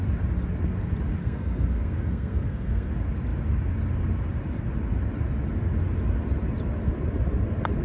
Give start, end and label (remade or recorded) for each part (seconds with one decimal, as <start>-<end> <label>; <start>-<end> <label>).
0.0-1.2 recorded; 1.2-2.9 remade; 2.9-7.8 recorded